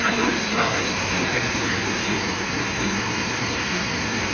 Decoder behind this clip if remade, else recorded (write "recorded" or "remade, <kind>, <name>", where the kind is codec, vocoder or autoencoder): remade, codec, SNAC